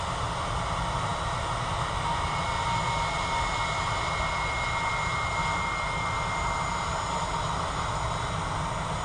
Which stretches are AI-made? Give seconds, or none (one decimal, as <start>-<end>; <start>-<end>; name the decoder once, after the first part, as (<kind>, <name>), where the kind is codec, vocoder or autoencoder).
none